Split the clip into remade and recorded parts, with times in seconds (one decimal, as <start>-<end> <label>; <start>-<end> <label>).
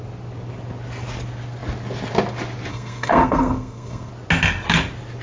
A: 0.0-2.7 recorded; 2.7-4.1 remade; 4.1-5.2 recorded